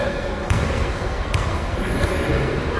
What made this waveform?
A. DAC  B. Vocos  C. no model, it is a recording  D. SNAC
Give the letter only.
D